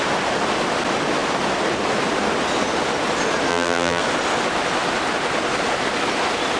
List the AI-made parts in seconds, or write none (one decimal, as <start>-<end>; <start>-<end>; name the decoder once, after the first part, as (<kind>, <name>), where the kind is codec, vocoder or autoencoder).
3.5-4.0 (vocoder, BigVGAN v2)